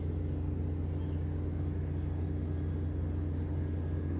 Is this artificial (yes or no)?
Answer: no